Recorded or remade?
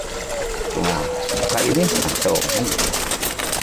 recorded